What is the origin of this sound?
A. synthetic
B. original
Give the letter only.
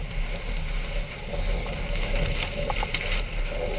B